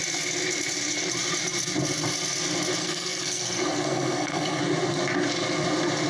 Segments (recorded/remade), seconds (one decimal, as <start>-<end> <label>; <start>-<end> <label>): 0.0-2.8 recorded; 2.8-4.6 remade; 4.6-6.1 recorded

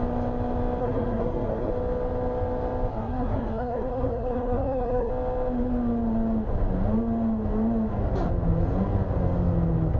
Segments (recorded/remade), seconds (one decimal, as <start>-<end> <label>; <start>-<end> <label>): 0.0-0.8 recorded; 0.8-1.7 remade; 1.7-2.9 recorded; 2.9-5.1 remade; 5.1-10.0 recorded